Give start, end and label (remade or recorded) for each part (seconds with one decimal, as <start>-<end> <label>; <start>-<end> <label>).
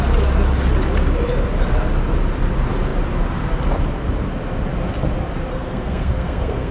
0.0-5.5 recorded; 5.5-6.7 remade